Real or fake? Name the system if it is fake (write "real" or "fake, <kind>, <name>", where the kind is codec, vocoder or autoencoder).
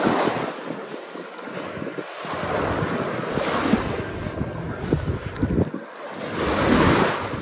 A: real